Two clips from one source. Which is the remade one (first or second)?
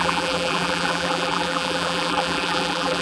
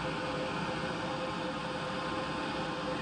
first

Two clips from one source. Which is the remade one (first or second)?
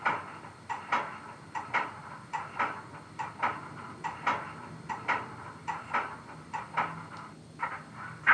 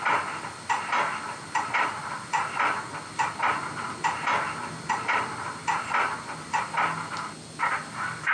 first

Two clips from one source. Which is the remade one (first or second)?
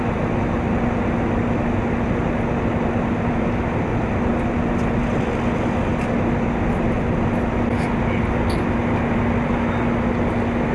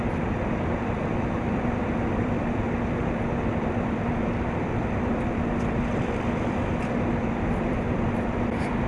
second